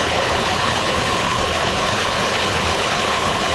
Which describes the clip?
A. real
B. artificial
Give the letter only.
B